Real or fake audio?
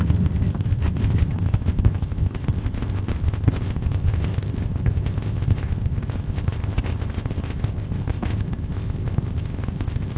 fake